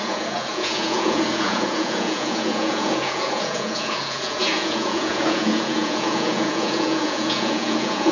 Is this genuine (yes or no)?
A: no